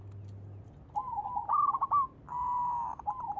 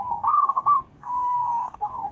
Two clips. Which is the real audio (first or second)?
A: first